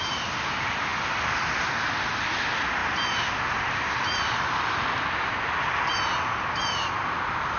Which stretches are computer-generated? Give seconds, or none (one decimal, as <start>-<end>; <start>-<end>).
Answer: none